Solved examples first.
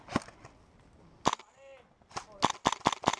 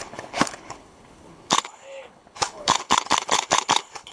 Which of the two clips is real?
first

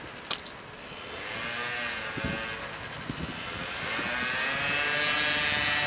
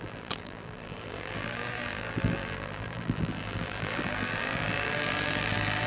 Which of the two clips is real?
first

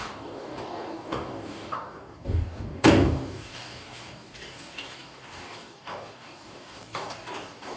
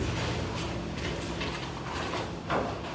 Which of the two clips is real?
second